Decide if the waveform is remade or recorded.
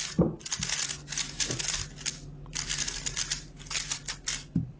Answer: recorded